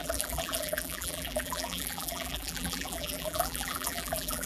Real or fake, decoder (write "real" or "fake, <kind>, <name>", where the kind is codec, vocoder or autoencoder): fake, vocoder, BigVGAN v2